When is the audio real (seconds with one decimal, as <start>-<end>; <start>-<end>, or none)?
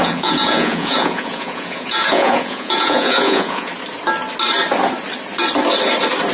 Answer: 3.7-6.3